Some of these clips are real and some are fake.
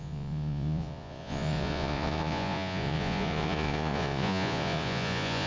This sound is fake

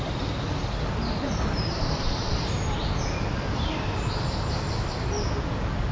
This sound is fake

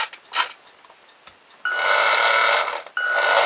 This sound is real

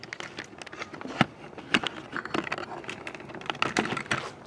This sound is real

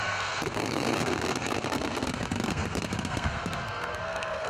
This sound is fake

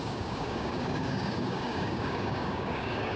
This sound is fake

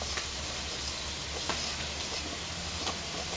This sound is real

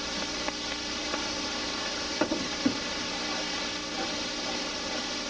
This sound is real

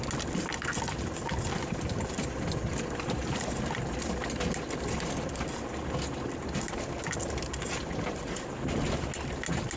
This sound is real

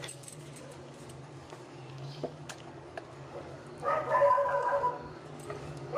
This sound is fake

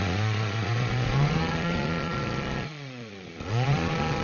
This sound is fake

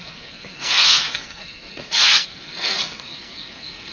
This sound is fake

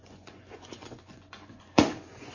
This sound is fake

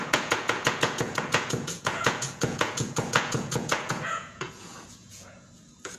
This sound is fake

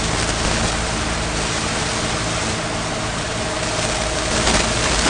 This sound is real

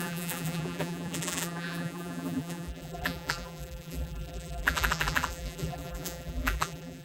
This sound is fake